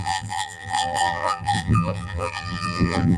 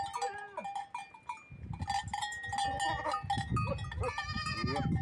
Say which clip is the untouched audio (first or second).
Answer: second